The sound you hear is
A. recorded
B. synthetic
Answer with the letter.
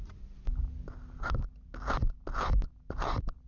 A